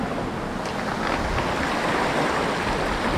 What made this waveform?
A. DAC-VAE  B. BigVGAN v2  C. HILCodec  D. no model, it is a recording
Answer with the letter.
D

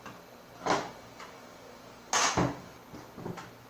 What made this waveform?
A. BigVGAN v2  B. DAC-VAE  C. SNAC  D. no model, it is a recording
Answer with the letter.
D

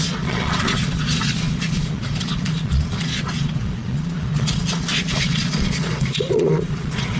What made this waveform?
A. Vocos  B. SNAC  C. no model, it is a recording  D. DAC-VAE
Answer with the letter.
A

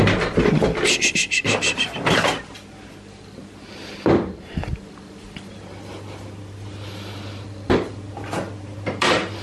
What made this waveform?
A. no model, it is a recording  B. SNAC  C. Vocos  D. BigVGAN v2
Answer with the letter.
D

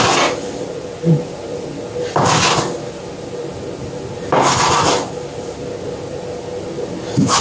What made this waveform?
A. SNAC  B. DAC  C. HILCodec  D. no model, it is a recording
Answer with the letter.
D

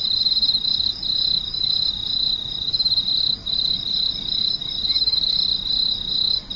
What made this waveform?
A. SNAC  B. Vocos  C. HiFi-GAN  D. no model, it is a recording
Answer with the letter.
D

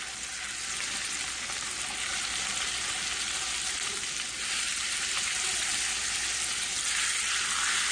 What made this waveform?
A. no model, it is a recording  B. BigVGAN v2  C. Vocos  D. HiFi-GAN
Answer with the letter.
A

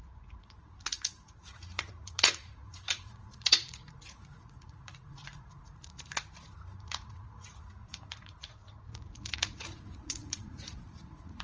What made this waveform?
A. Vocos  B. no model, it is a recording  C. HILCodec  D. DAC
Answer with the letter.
A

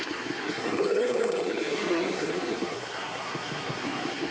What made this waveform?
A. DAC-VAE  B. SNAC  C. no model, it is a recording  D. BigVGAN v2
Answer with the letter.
B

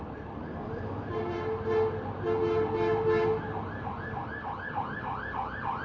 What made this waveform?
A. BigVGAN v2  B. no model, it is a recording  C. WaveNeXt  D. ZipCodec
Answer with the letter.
B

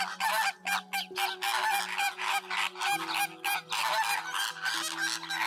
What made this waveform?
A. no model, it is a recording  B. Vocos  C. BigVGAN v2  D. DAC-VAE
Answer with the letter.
A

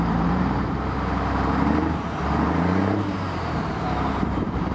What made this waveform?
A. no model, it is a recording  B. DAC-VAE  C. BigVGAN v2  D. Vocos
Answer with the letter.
C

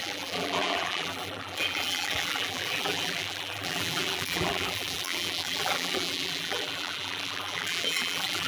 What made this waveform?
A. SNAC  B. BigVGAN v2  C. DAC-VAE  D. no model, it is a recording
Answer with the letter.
B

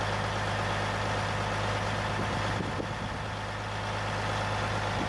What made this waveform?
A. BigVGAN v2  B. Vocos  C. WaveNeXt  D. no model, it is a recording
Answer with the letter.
D